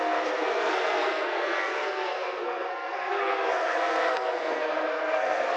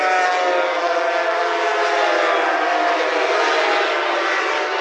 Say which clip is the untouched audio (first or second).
second